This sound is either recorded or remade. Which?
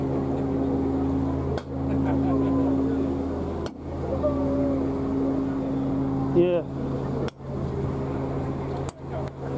recorded